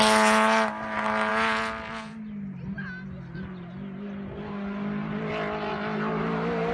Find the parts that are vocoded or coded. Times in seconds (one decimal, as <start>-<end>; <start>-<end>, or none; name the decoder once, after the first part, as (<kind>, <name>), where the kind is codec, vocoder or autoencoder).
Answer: none